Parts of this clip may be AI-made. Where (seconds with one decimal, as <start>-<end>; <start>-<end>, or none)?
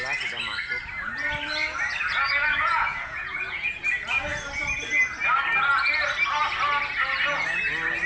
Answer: 2.5-3.8